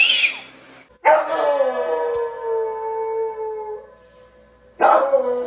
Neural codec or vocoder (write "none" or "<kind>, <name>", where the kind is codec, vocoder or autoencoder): none